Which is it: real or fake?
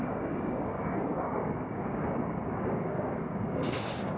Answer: fake